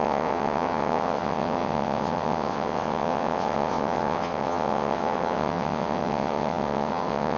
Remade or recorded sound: remade